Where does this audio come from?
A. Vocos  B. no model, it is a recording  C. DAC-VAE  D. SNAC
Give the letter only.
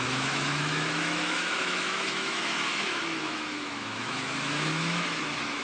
C